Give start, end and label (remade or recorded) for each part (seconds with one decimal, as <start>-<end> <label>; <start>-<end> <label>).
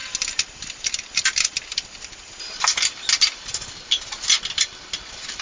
0.0-5.4 recorded